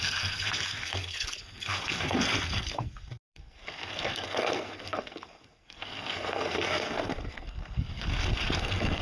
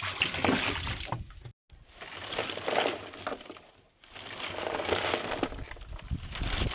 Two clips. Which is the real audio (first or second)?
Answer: second